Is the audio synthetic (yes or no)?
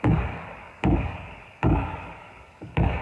yes